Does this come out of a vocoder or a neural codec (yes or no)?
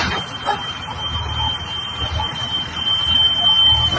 no